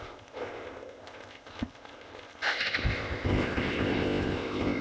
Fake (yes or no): yes